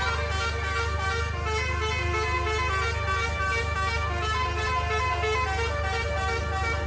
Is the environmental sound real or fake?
real